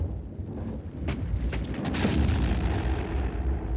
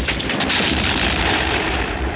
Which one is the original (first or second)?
first